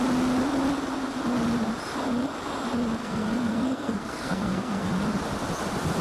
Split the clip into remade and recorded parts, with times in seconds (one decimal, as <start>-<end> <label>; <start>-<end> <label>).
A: 0.0-3.0 recorded; 3.0-4.9 remade; 4.9-6.0 recorded